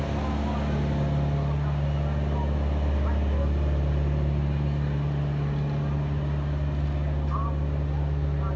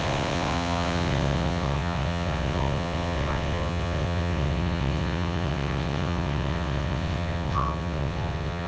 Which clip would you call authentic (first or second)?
first